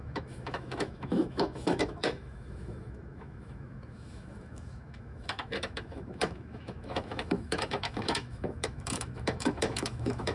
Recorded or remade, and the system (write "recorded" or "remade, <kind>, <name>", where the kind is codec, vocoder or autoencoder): remade, autoencoder, DAC-VAE